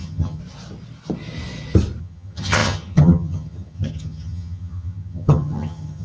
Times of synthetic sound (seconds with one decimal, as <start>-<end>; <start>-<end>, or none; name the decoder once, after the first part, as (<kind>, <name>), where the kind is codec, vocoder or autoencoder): 0.0-0.4 (vocoder, HiFi-GAN); 2.0-6.0